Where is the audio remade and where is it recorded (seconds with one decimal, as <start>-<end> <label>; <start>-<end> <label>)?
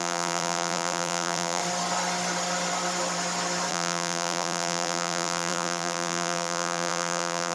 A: 0.0-1.6 remade; 1.6-3.7 recorded; 3.7-7.5 remade